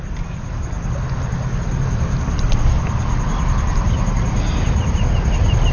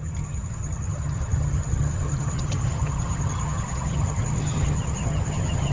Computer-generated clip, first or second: second